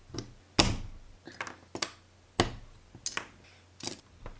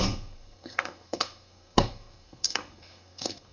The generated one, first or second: second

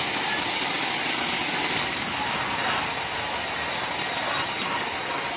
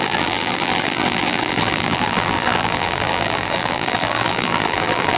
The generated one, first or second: second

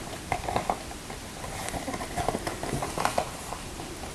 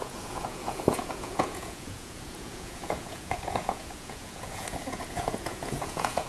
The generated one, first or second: second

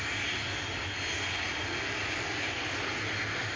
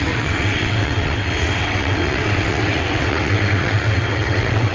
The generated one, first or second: second